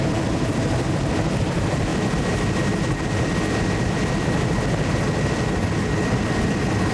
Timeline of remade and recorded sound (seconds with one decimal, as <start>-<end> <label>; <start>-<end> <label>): 0.0-1.9 remade; 1.9-4.9 recorded; 4.9-6.9 remade